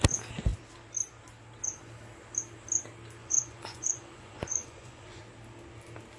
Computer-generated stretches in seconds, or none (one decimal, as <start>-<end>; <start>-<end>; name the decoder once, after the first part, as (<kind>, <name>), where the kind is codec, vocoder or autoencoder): 3.2-5.2 (vocoder, Vocos)